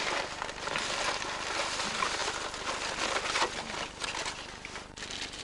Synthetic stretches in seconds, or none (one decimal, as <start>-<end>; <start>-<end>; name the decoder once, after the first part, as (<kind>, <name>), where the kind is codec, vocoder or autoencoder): none